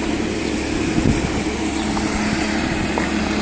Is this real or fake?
real